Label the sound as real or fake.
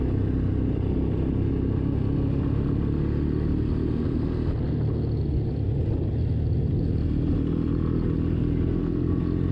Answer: real